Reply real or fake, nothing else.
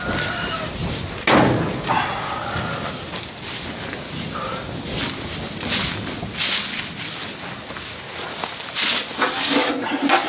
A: real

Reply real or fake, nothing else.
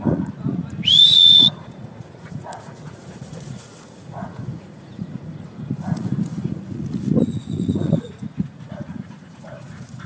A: fake